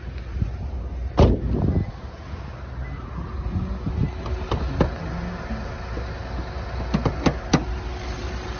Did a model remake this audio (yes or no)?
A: no